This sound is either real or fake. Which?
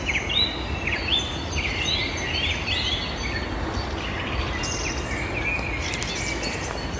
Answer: real